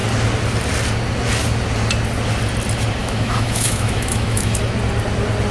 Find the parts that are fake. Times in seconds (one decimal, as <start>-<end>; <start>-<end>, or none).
3.0-4.6